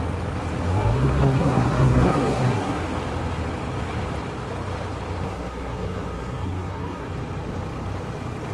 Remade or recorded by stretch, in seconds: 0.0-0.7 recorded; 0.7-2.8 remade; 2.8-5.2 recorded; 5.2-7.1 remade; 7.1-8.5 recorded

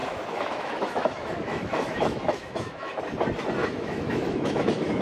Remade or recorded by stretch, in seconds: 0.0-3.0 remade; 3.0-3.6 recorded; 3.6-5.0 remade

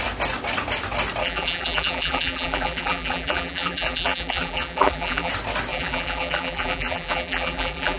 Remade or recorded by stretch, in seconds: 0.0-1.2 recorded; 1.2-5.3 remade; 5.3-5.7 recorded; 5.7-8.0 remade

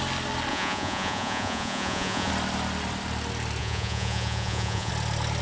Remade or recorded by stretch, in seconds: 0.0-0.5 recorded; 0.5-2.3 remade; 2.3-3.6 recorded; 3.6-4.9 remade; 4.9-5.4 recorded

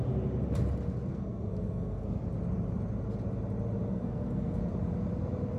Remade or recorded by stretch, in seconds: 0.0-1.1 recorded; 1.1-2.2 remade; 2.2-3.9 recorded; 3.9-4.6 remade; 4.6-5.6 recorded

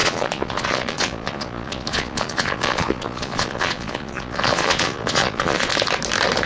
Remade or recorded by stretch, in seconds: 0.0-5.7 remade; 5.7-6.5 recorded